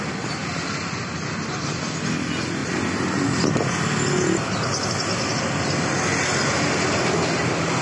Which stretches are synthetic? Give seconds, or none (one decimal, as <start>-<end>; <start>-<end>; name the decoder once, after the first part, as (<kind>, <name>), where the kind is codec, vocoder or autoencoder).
none